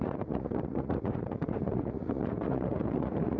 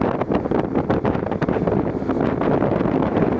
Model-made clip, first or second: first